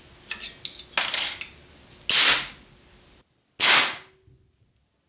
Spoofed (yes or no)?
no